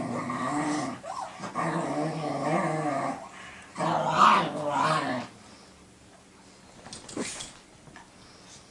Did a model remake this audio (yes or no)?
no